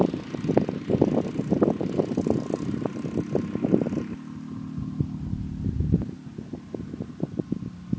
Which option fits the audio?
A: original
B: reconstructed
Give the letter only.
A